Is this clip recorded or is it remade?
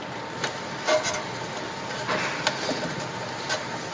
recorded